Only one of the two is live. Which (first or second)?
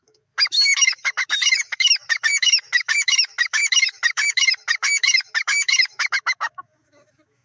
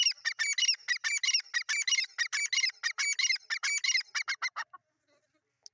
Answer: second